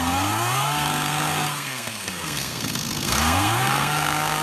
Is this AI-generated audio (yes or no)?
yes